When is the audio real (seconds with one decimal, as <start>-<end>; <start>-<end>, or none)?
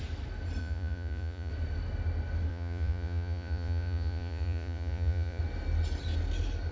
0.0-0.6; 1.5-2.5; 5.4-6.7